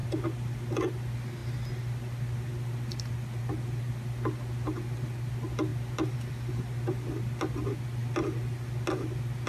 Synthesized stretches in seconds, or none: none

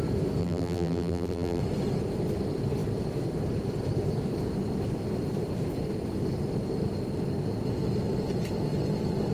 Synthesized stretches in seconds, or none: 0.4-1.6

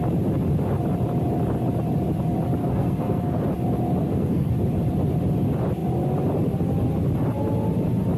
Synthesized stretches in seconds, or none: 2.6-3.4; 4.0-4.5

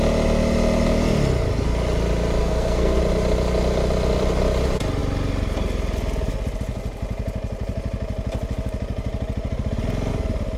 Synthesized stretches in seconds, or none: 2.4-3.0